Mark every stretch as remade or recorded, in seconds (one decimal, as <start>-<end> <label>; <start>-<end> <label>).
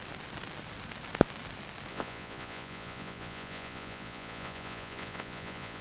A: 0.0-1.9 recorded; 1.9-5.8 remade